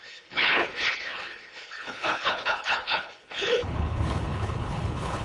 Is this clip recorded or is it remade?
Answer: remade